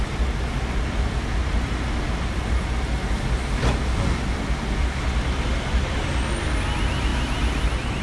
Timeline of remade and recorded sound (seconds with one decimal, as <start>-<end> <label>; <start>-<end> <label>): 0.0-5.5 recorded; 5.5-6.0 remade; 6.0-8.0 recorded

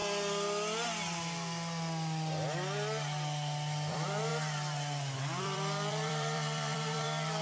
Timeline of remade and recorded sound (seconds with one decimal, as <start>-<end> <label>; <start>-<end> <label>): 0.0-3.9 recorded; 3.9-4.3 remade; 4.3-5.4 recorded; 5.4-7.4 remade

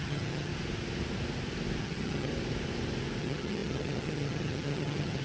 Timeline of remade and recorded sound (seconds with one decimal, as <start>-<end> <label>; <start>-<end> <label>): 0.0-0.5 remade; 0.5-1.8 recorded; 1.8-2.3 remade; 2.3-3.2 recorded; 3.2-5.2 remade

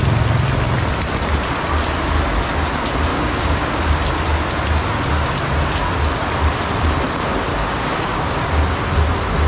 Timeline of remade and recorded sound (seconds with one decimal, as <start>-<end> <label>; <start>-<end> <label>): 0.0-3.1 recorded; 3.1-3.8 remade; 3.8-7.5 recorded; 7.5-8.5 remade; 8.5-9.5 recorded

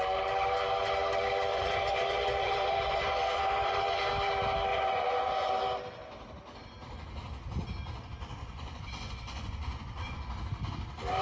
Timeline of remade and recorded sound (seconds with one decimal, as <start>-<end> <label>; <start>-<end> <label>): 0.0-1.5 recorded; 1.5-4.1 remade; 4.1-4.7 recorded; 4.7-5.5 remade; 5.5-8.4 recorded; 8.4-10.3 remade; 10.3-11.2 recorded

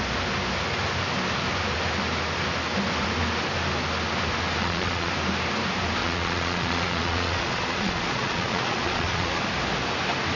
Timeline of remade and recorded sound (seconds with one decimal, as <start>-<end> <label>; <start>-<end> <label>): 0.0-4.6 recorded; 4.6-5.1 remade; 5.1-6.0 recorded; 6.0-9.4 remade; 9.4-10.4 recorded

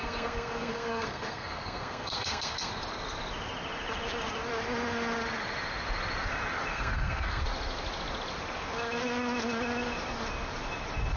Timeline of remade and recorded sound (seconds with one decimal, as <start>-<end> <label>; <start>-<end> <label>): 0.0-2.7 remade; 2.7-6.7 recorded; 6.7-7.4 remade; 7.4-11.2 recorded